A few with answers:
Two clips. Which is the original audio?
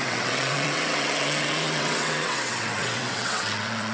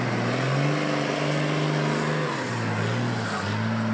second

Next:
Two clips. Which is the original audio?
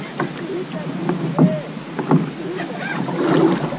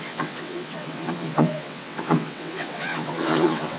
first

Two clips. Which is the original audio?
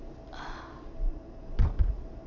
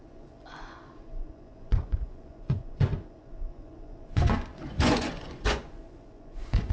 first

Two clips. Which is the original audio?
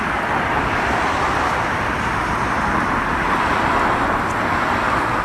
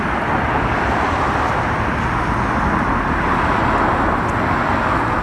second